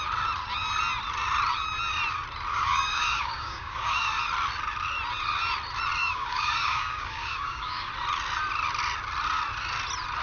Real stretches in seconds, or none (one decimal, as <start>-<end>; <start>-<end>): 0.0-2.5; 4.2-6.0; 7.9-10.2